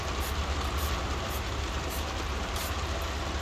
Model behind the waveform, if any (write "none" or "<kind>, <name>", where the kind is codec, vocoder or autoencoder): none